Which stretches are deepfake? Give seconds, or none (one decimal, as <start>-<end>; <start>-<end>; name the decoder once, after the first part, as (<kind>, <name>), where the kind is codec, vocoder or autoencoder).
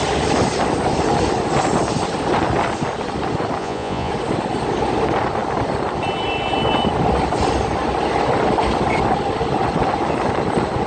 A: 3.6-4.1 (vocoder, Vocos)